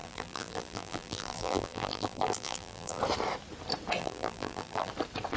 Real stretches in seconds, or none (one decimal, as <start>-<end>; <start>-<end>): 3.0-4.0; 4.9-5.4